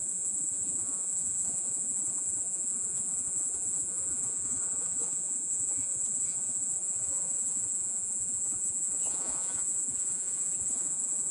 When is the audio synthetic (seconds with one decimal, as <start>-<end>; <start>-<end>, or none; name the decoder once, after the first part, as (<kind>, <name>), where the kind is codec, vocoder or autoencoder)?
0.0-11.3 (vocoder, Vocos)